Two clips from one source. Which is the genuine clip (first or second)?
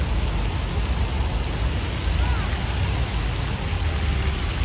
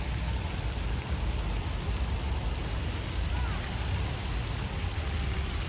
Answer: first